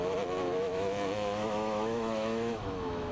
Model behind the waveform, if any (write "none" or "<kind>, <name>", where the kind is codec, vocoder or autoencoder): autoencoder, DAC-VAE